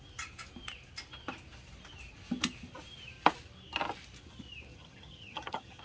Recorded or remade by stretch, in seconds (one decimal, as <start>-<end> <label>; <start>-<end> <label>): 0.0-4.7 recorded; 4.7-5.8 remade